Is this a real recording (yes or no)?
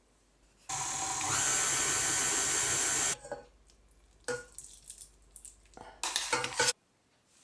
yes